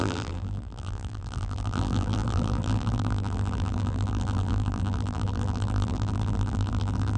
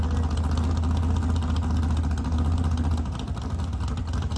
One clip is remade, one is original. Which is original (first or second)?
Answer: second